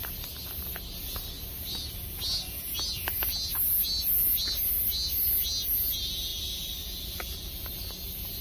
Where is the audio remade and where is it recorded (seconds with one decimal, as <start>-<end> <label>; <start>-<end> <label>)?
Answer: 0.0-8.4 recorded